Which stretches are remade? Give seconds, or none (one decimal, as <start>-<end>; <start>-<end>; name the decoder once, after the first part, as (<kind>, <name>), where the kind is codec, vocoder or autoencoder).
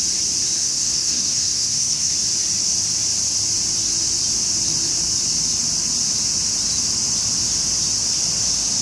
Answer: 0.6-2.1 (codec, SNAC)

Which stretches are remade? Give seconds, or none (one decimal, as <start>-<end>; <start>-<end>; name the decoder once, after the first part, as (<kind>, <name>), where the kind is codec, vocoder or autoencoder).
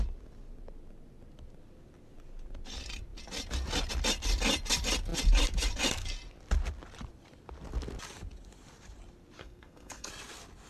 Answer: 9.4-10.1 (codec, SNAC)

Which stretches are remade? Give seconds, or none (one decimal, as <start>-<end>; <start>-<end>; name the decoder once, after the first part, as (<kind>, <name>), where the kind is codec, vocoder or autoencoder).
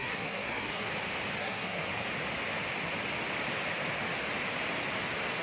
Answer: 0.0-0.9 (codec, SNAC); 1.4-1.9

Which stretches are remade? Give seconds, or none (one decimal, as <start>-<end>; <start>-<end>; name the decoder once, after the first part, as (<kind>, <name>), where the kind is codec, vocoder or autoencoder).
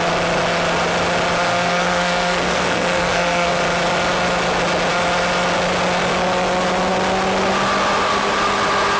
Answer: 1.5-3.6 (codec, SNAC)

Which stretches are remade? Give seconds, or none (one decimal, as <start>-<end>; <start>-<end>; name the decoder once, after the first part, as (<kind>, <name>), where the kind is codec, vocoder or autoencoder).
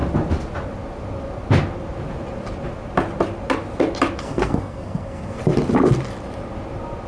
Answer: 4.2-5.4 (codec, SNAC)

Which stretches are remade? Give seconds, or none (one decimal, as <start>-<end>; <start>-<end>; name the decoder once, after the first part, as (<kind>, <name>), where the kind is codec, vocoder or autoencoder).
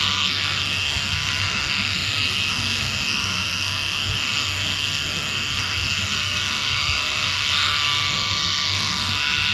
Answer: 0.0-9.5 (codec, SNAC)